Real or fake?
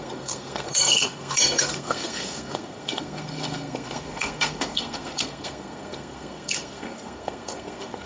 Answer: fake